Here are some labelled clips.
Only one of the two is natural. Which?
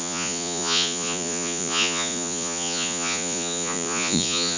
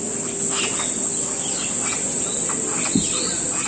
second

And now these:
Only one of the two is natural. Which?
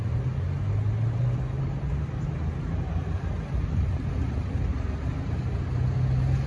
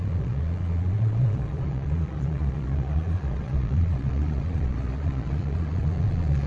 first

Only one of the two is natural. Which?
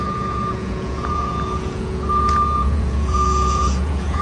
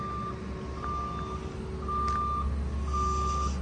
second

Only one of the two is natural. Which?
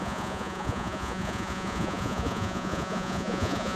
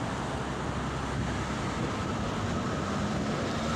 second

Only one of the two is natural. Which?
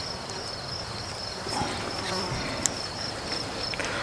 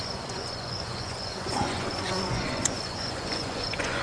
first